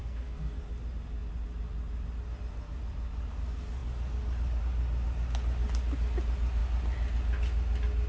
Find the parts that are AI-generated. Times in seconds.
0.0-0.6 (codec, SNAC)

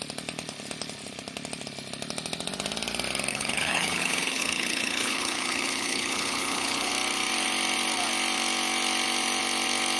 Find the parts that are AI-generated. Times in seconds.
3.3-6.9 (codec, HILCodec)

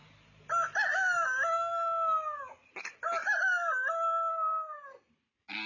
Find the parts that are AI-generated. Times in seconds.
4.3-5.1 (codec, SNAC)

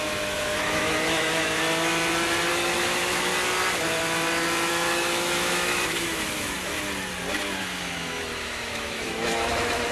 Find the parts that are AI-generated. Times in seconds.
0.0-1.6 (autoencoder, DAC-VAE); 2.5-3.3; 4.7-6.7; 7.6-9.9

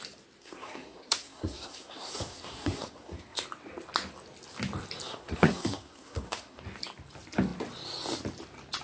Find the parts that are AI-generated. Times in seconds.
0.4-3.4 (codec, SNAC); 5.1-6.6

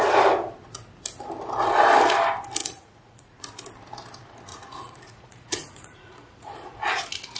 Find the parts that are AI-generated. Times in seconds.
2.6-3.4 (vocoder, Vocos); 4.5-7.0

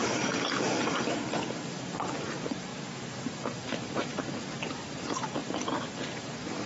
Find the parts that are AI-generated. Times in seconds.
0.5-2.7 (vocoder, BigVGAN v2); 3.3-5.4; 6.2-6.7

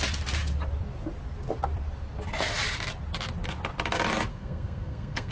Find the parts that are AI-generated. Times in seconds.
4.3-5.3 (codec, SNAC)